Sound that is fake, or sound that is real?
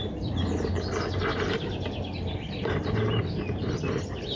real